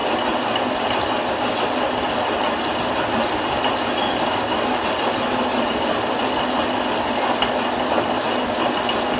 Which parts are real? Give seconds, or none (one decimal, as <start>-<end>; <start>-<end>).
0.0-4.0; 4.8-9.2